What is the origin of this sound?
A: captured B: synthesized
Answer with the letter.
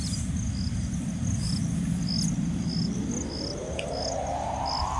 A